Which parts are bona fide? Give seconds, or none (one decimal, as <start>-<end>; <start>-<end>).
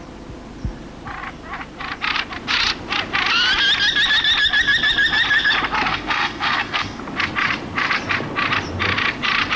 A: 0.0-5.9; 7.0-9.6